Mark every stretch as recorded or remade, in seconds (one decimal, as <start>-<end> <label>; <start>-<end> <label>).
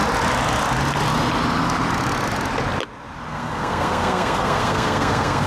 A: 0.0-3.3 recorded; 3.3-5.5 remade